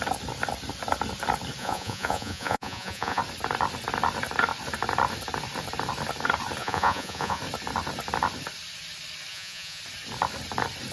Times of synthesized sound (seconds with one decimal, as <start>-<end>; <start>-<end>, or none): 1.6-3.2; 6.6-7.4; 9.3-9.8